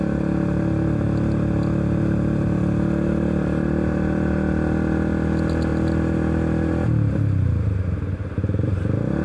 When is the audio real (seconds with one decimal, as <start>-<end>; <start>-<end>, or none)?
0.0-9.2